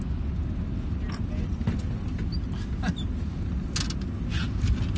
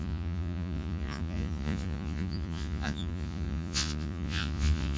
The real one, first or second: first